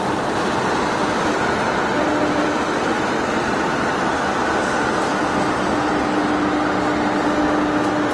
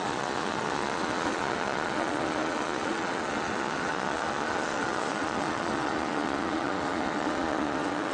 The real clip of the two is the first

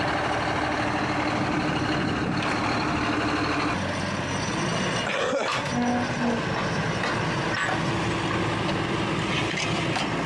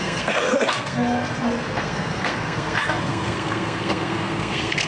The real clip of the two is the first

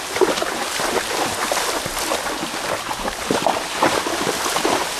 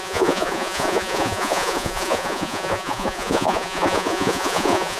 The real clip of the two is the first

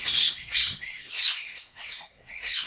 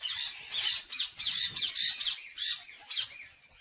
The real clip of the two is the second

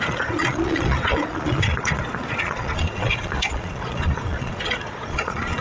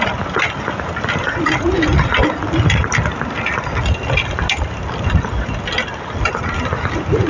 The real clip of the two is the second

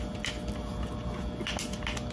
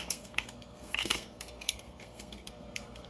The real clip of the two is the first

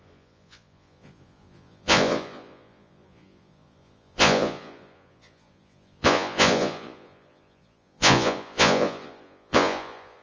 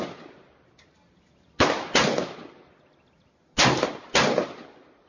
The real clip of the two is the second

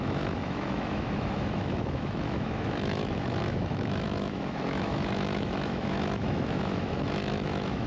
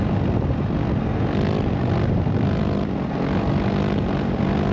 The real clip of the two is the second